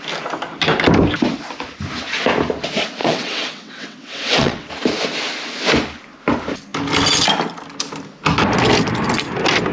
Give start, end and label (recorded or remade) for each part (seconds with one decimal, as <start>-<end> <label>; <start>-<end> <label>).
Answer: 0.0-3.0 recorded; 3.0-4.7 remade; 4.7-9.7 recorded